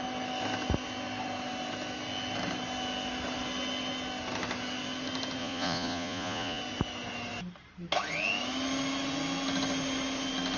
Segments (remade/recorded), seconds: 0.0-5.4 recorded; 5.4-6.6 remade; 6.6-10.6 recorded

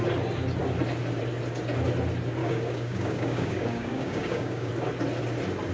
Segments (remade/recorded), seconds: 0.0-2.4 recorded; 2.4-4.7 remade; 4.7-5.7 recorded

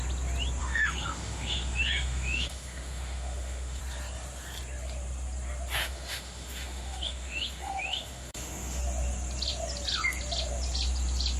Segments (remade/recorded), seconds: 0.0-0.6 recorded; 0.6-3.8 remade; 3.8-5.8 recorded; 5.8-8.8 remade; 8.8-11.4 recorded

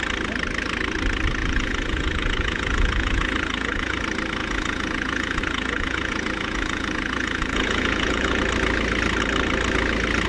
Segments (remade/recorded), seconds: 0.0-1.4 recorded; 1.4-4.0 remade; 4.0-4.4 recorded; 4.4-8.4 remade; 8.4-10.3 recorded

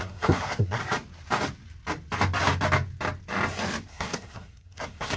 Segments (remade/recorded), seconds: 0.0-0.8 remade; 0.8-3.9 recorded; 3.9-5.2 remade